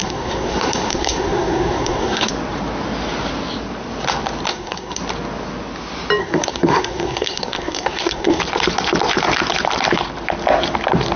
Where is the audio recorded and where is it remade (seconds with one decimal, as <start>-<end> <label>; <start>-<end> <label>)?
0.0-2.3 remade; 2.3-4.5 recorded; 4.5-5.0 remade; 5.0-6.2 recorded; 6.2-8.4 remade; 8.4-11.2 recorded